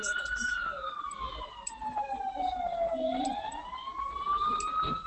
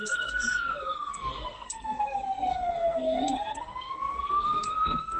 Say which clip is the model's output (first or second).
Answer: second